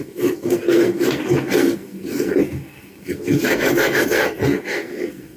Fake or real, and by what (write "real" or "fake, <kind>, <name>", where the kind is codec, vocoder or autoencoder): fake, codec, SNAC